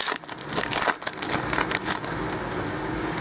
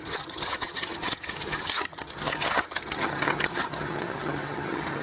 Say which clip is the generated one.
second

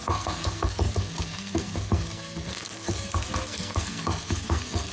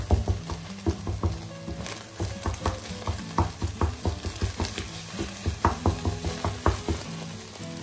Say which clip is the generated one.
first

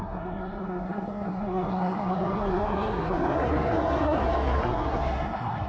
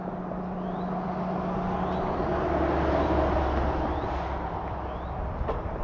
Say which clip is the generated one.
first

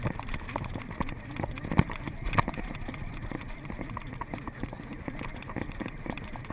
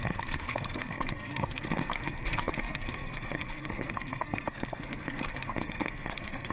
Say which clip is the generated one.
second